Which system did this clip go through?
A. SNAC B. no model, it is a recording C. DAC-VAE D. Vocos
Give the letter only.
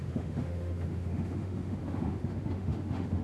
C